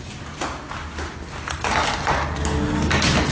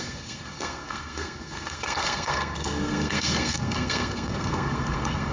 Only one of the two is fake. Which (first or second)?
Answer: second